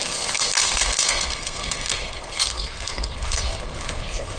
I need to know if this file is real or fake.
fake